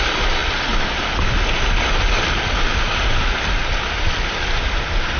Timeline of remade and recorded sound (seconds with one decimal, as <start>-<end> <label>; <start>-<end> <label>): 0.0-5.2 recorded